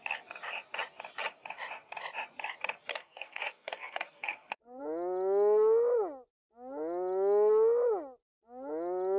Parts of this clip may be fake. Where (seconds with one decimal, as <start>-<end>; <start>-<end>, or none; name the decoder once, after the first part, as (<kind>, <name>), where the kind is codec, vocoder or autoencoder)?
2.9-4.8 (codec, SNAC)